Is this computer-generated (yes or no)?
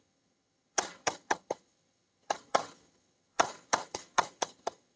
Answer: yes